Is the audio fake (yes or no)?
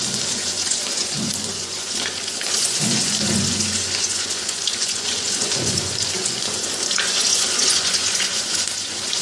yes